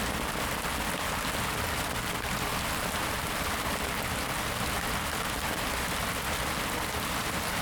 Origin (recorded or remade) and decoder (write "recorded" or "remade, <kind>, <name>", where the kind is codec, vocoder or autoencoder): recorded